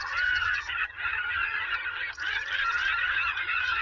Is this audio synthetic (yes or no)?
yes